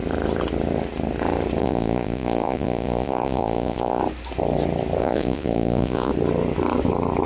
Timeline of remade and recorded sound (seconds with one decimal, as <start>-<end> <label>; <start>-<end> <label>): 0.0-1.6 recorded; 1.6-4.0 remade; 4.0-5.0 recorded; 5.0-6.1 remade; 6.1-7.3 recorded